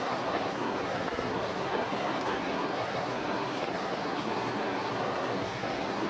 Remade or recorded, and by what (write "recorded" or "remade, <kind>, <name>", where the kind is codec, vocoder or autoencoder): remade, codec, SNAC